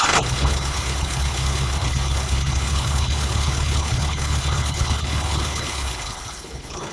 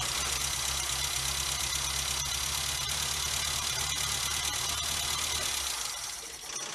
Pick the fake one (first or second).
first